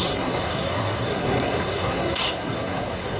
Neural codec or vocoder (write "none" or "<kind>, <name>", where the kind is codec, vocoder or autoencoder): codec, SNAC